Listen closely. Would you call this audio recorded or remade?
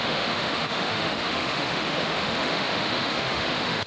remade